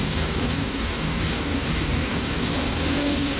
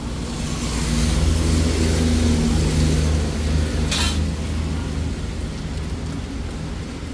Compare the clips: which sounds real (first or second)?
second